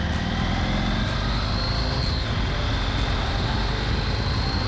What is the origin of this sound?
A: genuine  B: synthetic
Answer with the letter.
A